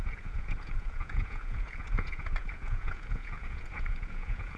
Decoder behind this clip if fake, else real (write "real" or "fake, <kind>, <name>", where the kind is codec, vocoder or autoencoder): fake, vocoder, Vocos